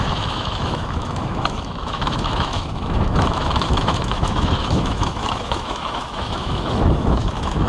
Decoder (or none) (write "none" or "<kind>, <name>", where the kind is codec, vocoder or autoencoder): autoencoder, DAC-VAE